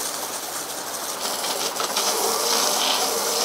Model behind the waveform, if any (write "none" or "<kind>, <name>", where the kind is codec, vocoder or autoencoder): vocoder, BigVGAN v2